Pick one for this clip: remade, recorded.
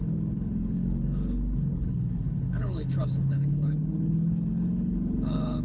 remade